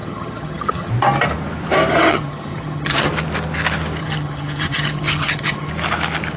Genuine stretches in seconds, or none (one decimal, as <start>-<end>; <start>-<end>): 0.9-2.1; 3.1-4.0; 5.7-6.4

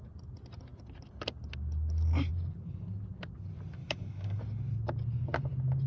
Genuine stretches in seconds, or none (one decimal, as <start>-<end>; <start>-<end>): 0.0-3.8; 4.4-5.9

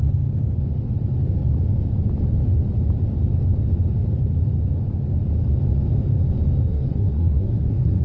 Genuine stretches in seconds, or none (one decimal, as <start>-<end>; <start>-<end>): 0.0-6.7

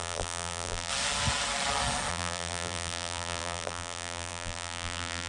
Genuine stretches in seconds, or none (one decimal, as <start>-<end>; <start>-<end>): 0.9-2.1